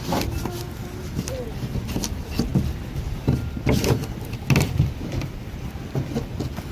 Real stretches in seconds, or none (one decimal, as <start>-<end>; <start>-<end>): 0.0-6.7